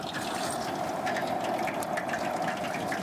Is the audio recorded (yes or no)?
yes